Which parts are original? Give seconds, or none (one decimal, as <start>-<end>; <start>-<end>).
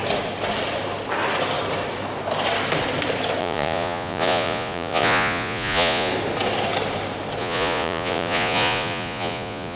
0.0-3.4; 6.1-7.4